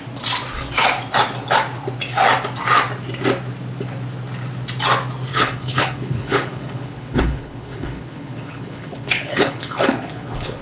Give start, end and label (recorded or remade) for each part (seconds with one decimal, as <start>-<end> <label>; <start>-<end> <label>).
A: 0.0-5.3 recorded; 5.3-10.6 remade